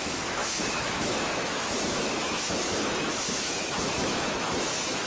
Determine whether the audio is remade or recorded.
remade